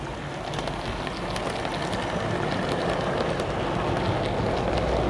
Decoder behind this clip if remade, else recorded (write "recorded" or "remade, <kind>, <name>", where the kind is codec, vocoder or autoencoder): recorded